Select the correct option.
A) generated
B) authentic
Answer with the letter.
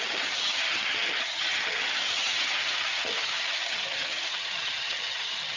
A